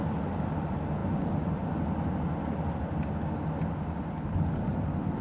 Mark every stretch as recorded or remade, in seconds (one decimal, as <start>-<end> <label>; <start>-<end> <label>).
0.0-5.2 recorded